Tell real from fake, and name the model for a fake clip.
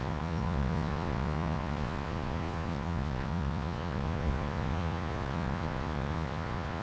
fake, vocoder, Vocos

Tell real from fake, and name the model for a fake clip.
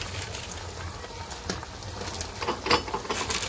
real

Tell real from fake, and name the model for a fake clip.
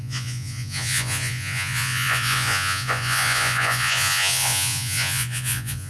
fake, vocoder, Vocos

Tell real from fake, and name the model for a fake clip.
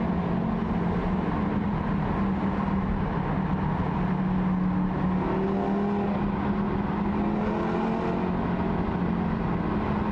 real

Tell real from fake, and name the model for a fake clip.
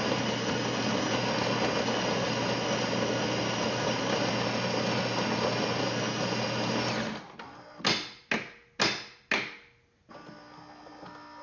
real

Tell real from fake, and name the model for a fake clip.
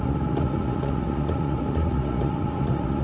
fake, vocoder, Vocos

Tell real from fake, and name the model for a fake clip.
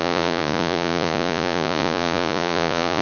fake, vocoder, Vocos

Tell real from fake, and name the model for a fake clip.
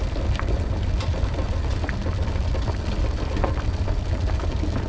real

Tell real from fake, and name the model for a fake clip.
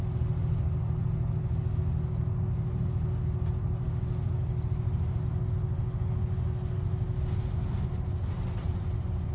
real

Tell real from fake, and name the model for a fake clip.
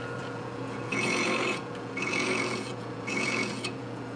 fake, vocoder, Vocos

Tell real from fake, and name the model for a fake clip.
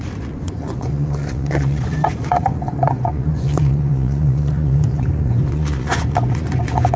fake, vocoder, Vocos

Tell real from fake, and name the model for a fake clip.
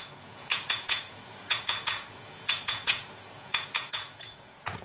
fake, vocoder, Vocos